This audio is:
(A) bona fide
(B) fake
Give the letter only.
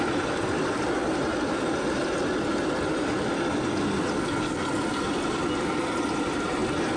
A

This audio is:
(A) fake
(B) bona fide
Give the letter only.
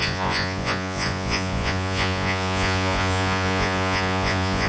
A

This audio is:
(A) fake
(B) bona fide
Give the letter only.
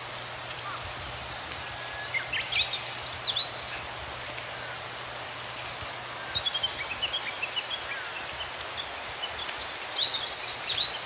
B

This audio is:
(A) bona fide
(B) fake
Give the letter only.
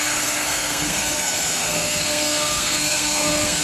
B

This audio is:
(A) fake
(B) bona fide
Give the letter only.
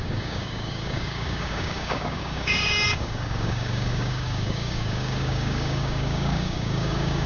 A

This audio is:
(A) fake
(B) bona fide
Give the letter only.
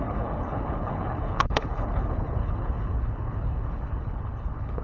A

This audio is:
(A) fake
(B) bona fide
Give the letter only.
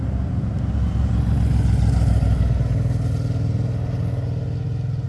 B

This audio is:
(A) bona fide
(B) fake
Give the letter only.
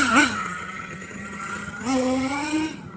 B